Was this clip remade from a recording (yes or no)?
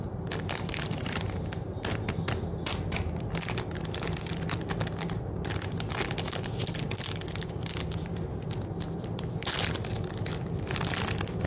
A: no